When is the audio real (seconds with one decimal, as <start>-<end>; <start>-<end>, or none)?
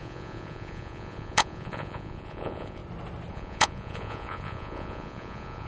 2.8-3.3